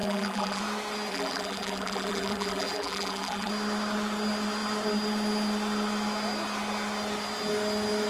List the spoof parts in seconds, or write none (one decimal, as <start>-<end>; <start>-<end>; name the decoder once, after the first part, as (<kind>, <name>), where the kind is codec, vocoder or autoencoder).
0.0-0.6 (vocoder, BigVGAN v2); 1.1-3.5

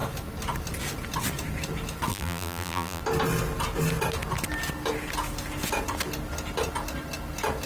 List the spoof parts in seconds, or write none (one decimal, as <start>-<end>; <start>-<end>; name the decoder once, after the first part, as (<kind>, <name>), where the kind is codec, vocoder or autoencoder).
2.1-3.0 (vocoder, BigVGAN v2)

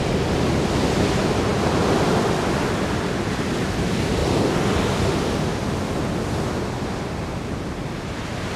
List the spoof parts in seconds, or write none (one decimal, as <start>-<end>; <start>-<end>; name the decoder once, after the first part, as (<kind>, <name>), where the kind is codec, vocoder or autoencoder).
1.5-2.2 (vocoder, BigVGAN v2); 4.2-6.3

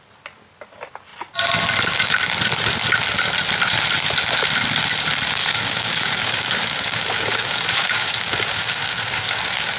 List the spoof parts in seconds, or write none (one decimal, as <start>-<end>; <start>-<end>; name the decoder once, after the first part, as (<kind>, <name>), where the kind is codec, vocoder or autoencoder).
5.4-9.4 (codec, DAC)

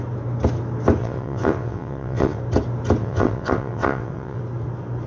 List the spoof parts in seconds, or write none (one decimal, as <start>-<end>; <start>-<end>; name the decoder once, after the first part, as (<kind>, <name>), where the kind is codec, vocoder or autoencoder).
1.0-2.4 (vocoder, WaveNeXt); 3.0-4.4